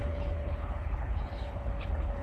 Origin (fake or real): fake